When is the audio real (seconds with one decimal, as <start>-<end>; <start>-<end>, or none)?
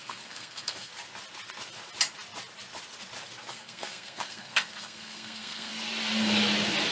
0.9-3.5; 5.7-6.9